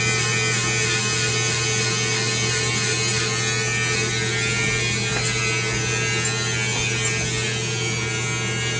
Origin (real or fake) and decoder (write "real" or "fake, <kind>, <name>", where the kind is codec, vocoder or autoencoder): real